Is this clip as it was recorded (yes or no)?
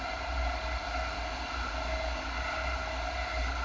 yes